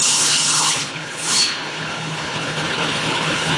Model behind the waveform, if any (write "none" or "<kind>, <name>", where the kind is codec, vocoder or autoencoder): codec, HILCodec